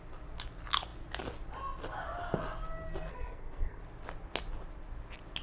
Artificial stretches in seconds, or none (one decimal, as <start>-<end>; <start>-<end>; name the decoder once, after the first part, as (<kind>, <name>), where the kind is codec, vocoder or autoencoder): 3.1-3.8 (codec, SNAC)